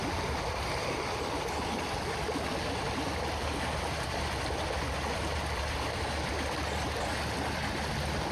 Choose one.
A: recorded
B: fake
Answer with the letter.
A